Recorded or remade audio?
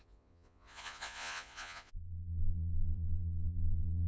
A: remade